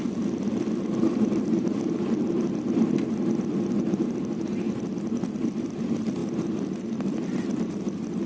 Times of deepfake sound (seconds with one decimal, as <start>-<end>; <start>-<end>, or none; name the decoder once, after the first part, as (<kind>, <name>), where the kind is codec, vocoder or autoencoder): none